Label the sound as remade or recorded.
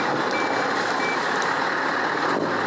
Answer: recorded